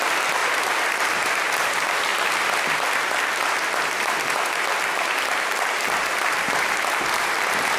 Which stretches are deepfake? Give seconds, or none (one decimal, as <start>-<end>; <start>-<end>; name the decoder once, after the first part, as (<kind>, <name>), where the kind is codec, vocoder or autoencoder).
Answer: 0.4-1.1 (vocoder, BigVGAN v2)